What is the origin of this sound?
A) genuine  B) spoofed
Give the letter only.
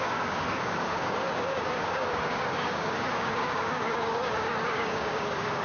B